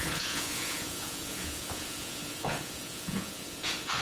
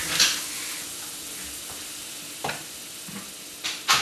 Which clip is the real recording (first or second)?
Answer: second